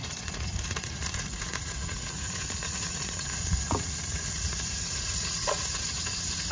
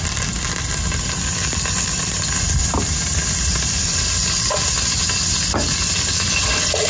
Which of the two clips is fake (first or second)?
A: first